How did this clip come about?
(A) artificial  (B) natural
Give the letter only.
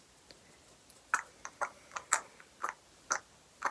B